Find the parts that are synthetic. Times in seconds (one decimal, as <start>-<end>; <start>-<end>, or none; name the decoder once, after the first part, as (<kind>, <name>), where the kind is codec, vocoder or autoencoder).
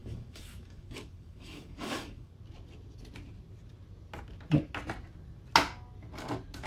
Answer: 0.0-2.3 (codec, DAC)